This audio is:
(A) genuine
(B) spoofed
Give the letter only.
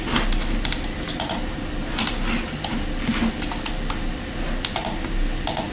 A